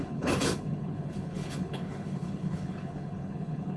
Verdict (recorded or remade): remade